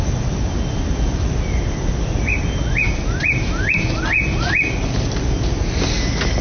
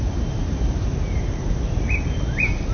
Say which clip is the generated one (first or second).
second